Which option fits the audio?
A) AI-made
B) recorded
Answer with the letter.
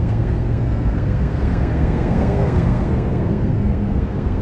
A